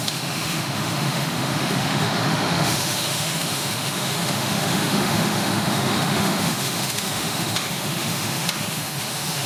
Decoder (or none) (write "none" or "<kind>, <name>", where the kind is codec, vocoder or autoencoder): autoencoder, DAC-VAE